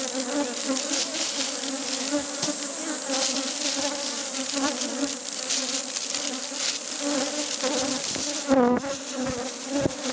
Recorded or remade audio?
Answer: recorded